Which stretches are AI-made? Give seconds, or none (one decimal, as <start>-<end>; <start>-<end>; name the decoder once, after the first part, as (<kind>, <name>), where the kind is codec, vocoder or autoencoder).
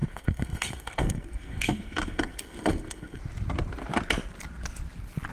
0.0-3.2 (codec, SNAC)